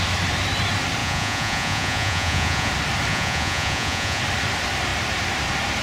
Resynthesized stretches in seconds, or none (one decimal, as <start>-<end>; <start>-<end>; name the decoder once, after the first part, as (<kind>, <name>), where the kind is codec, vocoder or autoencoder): 1.0-2.7 (vocoder, Vocos); 3.1-4.2